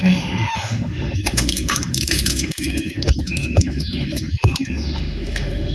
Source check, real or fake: fake